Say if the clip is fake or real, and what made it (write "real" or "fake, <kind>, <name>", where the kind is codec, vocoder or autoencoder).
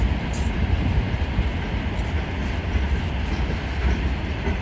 real